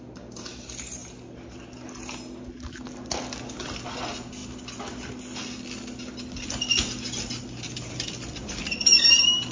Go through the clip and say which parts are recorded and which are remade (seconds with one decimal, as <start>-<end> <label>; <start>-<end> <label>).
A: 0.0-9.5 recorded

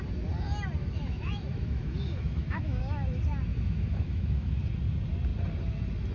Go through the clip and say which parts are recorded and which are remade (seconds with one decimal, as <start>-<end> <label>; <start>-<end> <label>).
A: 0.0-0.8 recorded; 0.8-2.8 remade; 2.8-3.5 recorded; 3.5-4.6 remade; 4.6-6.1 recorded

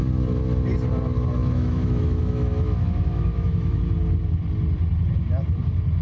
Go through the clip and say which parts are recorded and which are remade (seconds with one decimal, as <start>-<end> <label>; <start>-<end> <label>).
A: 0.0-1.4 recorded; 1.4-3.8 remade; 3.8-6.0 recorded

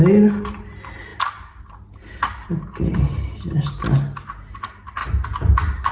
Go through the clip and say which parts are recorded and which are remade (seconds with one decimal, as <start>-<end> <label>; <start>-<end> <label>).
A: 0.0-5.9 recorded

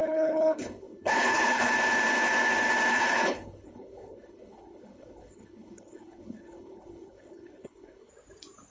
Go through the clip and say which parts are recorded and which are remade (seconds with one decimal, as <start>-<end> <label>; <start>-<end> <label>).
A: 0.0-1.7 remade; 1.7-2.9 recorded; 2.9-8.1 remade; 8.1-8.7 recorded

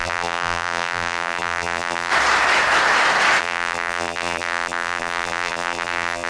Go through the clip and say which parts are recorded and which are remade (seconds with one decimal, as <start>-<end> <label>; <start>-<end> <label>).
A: 0.0-2.1 remade; 2.1-3.4 recorded; 3.4-6.3 remade